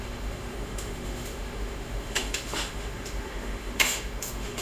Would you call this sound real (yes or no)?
no